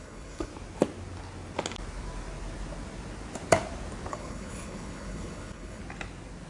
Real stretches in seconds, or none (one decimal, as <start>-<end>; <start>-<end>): 0.5-4.1; 5.8-6.5